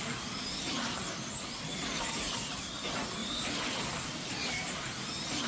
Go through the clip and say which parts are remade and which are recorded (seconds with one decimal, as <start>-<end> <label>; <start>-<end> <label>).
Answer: 0.0-1.0 recorded; 1.0-2.8 remade; 2.8-3.2 recorded; 3.2-4.3 remade; 4.3-5.5 recorded